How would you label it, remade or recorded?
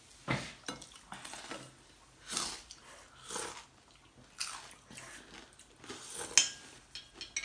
recorded